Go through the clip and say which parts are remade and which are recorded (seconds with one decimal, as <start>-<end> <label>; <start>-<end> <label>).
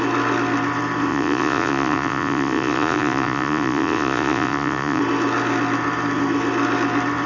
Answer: 0.0-1.1 recorded; 1.1-5.0 remade; 5.0-7.3 recorded